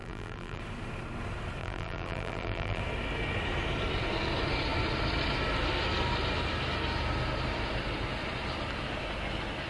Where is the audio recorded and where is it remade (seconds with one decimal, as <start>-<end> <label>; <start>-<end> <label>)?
0.0-0.6 remade; 0.6-1.6 recorded; 1.6-2.8 remade; 2.8-9.7 recorded